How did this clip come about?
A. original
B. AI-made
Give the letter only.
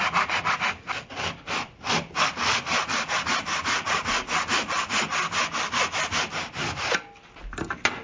A